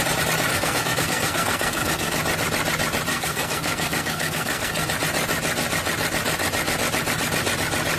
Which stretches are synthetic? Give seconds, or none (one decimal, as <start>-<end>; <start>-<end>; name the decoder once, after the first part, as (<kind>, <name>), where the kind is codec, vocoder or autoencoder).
0.5-2.1 (codec, SNAC); 3.1-4.9